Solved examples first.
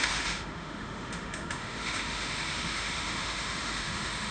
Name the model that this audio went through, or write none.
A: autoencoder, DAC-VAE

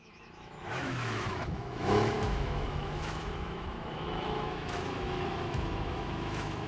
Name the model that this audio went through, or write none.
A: autoencoder, DAC-VAE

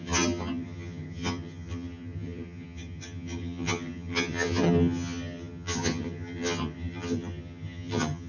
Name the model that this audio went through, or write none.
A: vocoder, HiFi-GAN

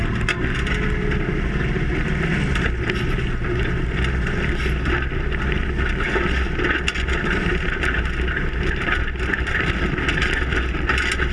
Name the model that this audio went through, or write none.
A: none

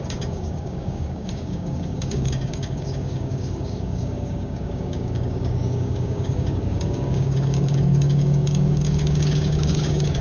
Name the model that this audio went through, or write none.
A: codec, DAC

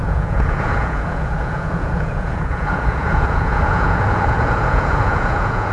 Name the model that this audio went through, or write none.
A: vocoder, Vocos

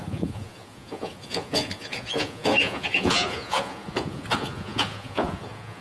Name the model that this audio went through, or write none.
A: vocoder, Vocos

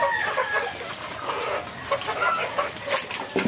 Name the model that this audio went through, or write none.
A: none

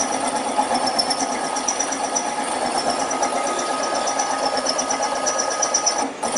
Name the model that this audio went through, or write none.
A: none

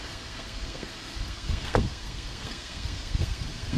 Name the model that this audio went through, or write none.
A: codec, SNAC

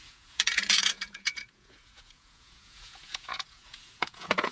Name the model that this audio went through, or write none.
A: vocoder, Vocos